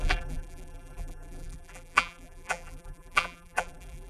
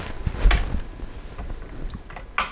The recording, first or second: second